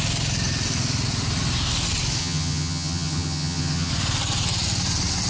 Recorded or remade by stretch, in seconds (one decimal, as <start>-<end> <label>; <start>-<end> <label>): 0.0-2.2 recorded; 2.2-3.9 remade; 3.9-5.3 recorded